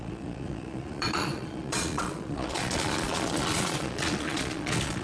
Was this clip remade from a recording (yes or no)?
yes